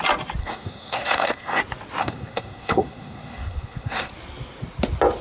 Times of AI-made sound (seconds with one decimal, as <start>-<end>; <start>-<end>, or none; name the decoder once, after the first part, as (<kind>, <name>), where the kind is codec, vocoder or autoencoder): 0.4-1.6 (codec, SNAC); 2.0-4.1